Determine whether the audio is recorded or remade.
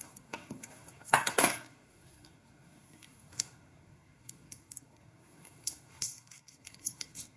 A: remade